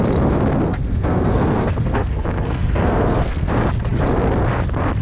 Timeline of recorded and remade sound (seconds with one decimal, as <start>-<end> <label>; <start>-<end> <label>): 0.0-0.7 recorded; 0.7-3.5 remade; 3.5-5.0 recorded